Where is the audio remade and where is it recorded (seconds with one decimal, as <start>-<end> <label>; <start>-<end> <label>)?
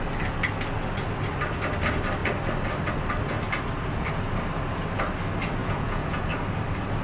0.0-5.6 recorded; 5.6-6.3 remade; 6.3-7.0 recorded